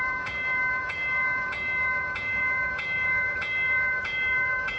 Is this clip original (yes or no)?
no